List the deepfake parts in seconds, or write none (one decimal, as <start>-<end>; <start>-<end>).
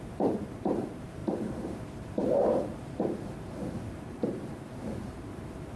0.0-5.8